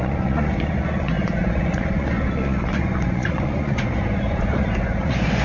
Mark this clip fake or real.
fake